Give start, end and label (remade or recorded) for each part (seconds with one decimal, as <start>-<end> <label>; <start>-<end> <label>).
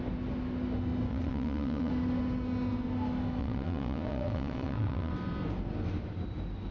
0.0-1.1 recorded; 1.1-1.9 remade; 1.9-3.4 recorded; 3.4-5.1 remade; 5.1-6.7 recorded